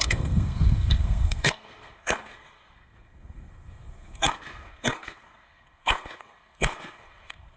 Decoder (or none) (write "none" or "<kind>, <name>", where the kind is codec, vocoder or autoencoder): codec, SNAC